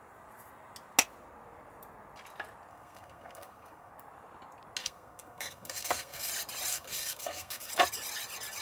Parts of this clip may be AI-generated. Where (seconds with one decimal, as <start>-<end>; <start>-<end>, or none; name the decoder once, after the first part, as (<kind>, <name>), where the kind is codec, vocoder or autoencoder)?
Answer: 2.7-3.9 (codec, SNAC); 4.8-6.3; 6.7-7.7